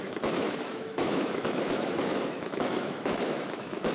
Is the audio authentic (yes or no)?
no